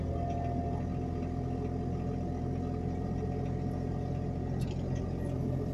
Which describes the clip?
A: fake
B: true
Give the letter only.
B